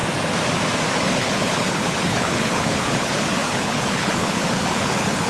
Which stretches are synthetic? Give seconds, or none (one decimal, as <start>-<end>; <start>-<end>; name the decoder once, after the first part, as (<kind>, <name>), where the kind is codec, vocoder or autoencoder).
0.9-5.3 (codec, HILCodec)